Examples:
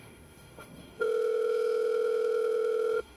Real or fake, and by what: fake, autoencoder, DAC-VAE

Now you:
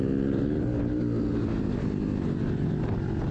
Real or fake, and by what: real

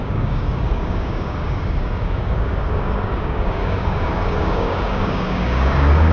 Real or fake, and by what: fake, codec, DAC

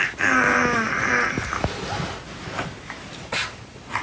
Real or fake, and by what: real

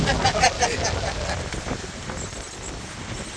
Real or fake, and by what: real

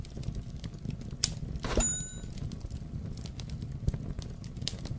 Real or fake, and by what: real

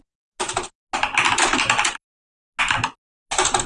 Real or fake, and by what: real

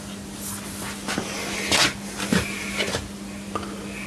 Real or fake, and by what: real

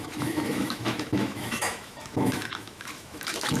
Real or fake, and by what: fake, autoencoder, DAC-VAE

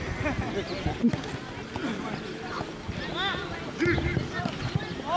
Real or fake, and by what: real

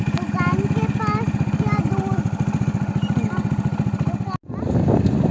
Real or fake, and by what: real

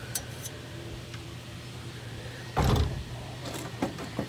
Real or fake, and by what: fake, vocoder, BigVGAN v2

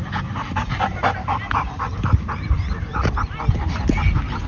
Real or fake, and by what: fake, vocoder, BigVGAN v2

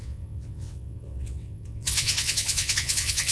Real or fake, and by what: fake, vocoder, WaveNeXt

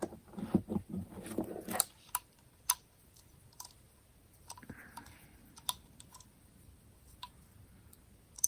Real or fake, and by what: fake, vocoder, BigVGAN v2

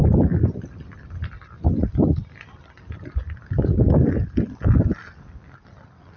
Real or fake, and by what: real